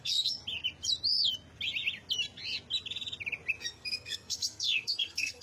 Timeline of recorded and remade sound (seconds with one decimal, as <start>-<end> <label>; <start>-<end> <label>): 0.0-0.4 remade; 0.4-3.6 recorded; 3.6-5.4 remade